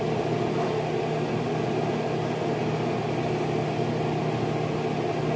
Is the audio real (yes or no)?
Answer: yes